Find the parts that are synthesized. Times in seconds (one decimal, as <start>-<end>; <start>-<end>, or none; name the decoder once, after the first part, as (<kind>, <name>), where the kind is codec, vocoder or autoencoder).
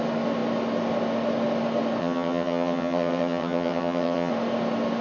2.0-4.3 (vocoder, HiFi-GAN)